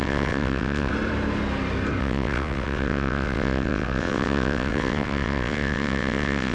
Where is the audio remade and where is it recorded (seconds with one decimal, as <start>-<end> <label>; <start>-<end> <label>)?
0.0-0.9 remade; 0.9-2.0 recorded; 2.0-6.5 remade